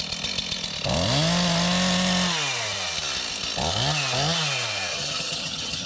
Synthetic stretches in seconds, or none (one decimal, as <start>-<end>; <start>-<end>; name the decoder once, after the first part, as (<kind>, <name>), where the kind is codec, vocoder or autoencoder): 4.9-5.9 (vocoder, HiFi-GAN)